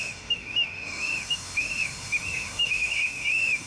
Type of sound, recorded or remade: remade